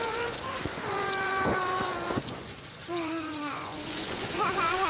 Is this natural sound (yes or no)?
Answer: no